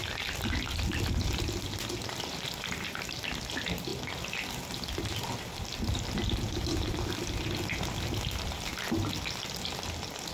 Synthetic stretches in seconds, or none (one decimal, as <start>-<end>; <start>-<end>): none